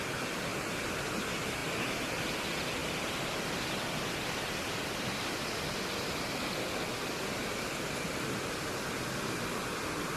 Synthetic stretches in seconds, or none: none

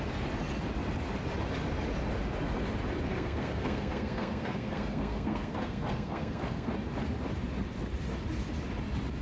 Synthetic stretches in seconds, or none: 3.1-6.7 (codec, SNAC)

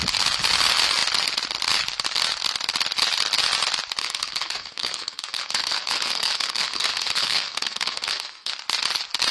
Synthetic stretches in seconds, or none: 4.0-8.5 (codec, SNAC)

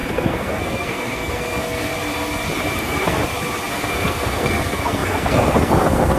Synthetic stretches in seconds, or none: 0.0-1.9 (codec, SNAC); 2.8-3.2; 3.7-6.2

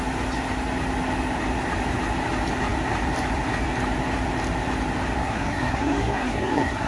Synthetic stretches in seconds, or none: 5.2-6.9 (codec, SNAC)